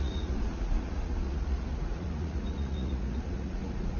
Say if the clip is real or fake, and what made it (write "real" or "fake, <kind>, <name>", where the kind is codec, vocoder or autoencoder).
fake, vocoder, Vocos